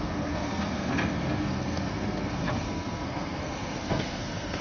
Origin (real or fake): fake